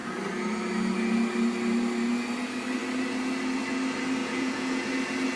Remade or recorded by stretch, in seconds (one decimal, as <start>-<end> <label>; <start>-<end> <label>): 0.0-4.2 recorded; 4.2-4.9 remade; 4.9-5.4 recorded